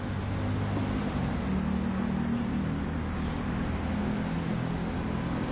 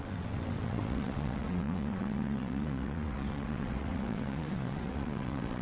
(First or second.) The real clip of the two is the first